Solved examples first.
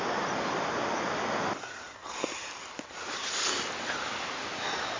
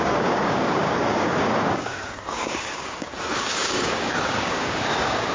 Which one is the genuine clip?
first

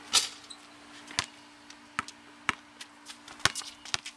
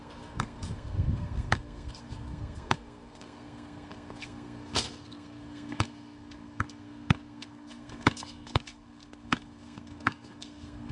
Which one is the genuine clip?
first